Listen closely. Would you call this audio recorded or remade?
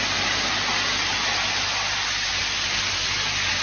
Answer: recorded